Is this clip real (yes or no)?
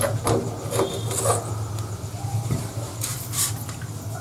yes